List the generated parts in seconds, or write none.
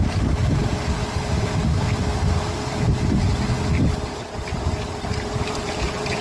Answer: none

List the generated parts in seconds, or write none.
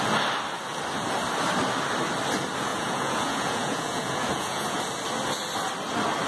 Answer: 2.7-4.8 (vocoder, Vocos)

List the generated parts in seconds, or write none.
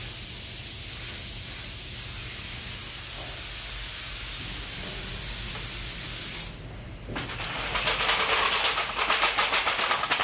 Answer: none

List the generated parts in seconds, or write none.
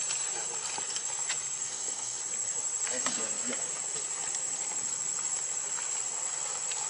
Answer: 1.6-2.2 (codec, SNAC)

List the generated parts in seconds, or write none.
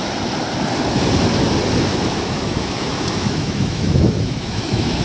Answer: 1.9-5.0 (autoencoder, DAC-VAE)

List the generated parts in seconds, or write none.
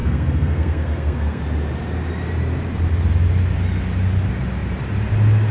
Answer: 0.0-1.4 (codec, SNAC)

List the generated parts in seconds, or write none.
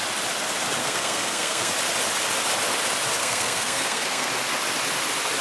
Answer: 0.8-1.7 (codec, SNAC); 3.2-4.3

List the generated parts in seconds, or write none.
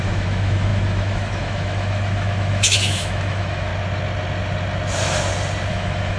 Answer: 0.0-3.7 (autoencoder, DAC-VAE); 5.7-6.2